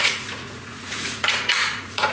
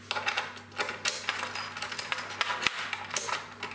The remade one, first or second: first